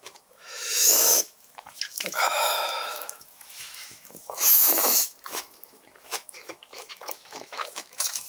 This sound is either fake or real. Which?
fake